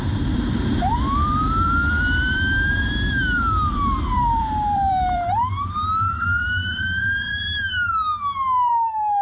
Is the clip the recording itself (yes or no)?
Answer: no